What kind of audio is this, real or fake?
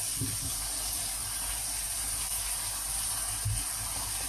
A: real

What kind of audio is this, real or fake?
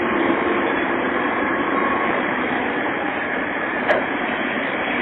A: fake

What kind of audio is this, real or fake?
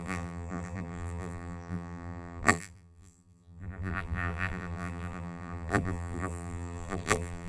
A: fake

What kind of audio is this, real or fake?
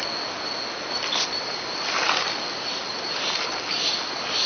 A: real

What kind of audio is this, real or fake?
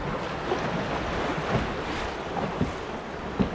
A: real